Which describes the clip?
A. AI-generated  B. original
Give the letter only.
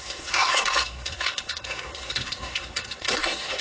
A